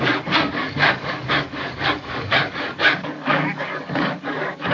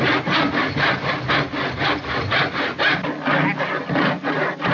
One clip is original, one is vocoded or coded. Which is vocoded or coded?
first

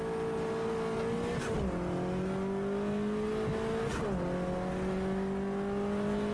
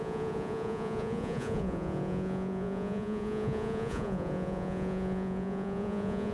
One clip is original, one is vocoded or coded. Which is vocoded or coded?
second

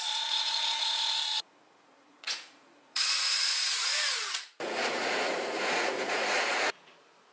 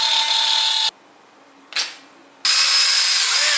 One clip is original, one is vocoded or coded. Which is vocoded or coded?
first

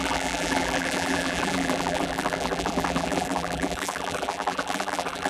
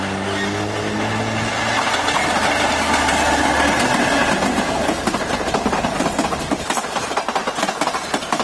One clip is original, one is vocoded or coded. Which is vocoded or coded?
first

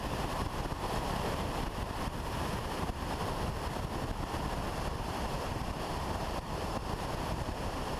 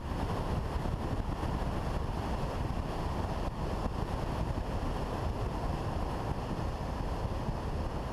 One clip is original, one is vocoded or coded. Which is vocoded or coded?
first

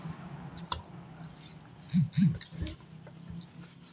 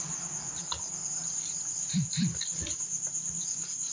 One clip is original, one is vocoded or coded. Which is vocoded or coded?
second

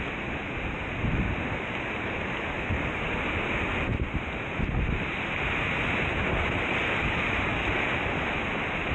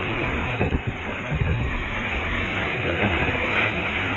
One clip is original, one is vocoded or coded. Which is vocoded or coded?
second